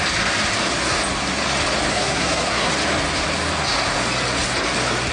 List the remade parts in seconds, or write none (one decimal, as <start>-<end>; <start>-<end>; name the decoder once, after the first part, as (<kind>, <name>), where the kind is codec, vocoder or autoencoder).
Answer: 1.9-2.7 (codec, SNAC)